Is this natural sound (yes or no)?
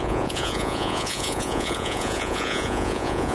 no